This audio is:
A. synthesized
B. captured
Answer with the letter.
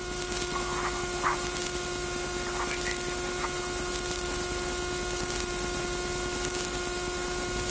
B